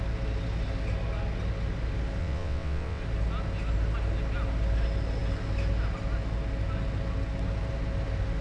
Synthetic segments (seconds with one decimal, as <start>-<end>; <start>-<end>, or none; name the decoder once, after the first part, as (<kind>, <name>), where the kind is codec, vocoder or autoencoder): 2.2-3.0 (vocoder, WaveNeXt)